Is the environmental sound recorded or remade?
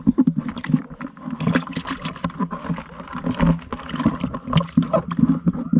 recorded